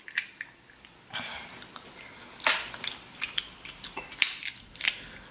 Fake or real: real